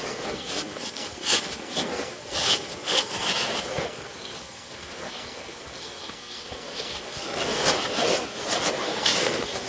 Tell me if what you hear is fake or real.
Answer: fake